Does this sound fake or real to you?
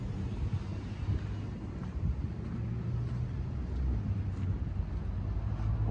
real